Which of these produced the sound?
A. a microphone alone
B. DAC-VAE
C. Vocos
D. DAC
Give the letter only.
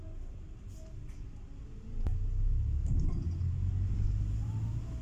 A